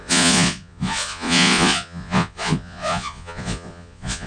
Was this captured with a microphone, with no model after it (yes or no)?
no